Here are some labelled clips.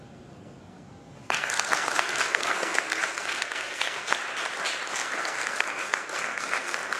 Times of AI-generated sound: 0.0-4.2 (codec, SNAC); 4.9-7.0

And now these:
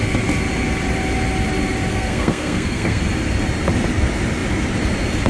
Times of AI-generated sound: 1.9-3.0 (codec, SNAC)

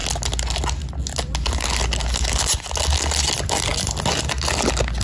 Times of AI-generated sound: none